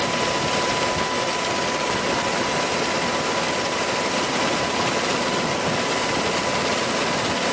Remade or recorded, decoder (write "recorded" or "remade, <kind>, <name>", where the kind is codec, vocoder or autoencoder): recorded